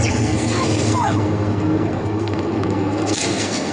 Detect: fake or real fake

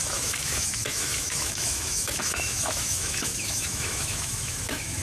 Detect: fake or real fake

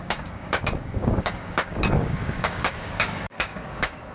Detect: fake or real fake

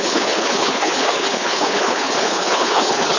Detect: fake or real fake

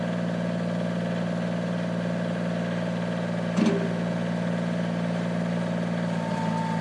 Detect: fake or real real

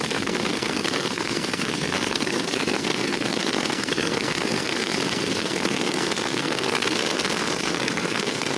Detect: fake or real fake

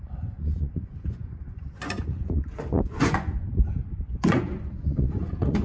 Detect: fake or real fake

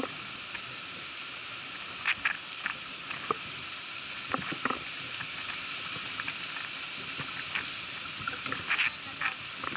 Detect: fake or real real